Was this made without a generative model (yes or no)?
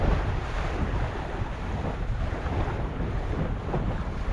yes